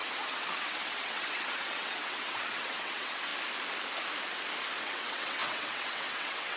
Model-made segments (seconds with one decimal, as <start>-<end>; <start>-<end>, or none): 0.0-3.3; 4.8-6.6